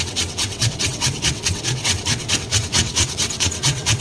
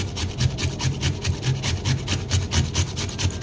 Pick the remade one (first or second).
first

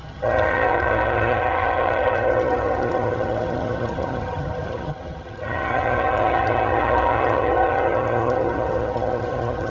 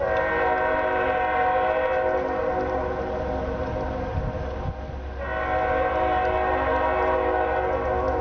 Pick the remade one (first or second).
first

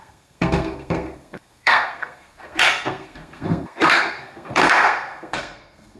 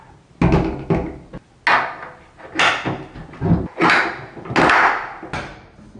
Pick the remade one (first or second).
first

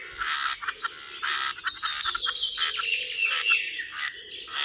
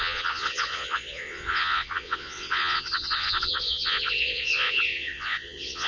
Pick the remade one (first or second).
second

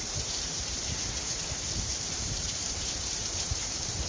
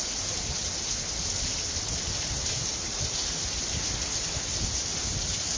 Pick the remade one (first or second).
first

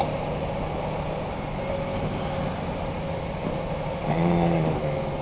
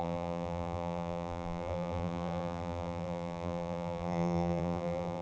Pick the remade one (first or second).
second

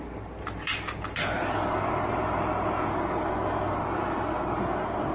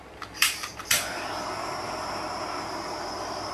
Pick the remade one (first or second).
second